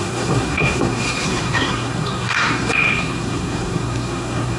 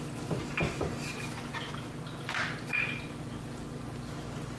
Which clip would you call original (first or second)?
second